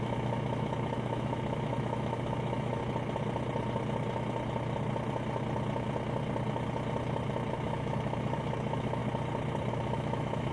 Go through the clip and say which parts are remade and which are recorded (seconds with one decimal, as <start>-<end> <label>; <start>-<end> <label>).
0.0-2.8 remade; 2.8-7.5 recorded; 7.5-9.0 remade; 9.0-9.7 recorded; 9.7-10.5 remade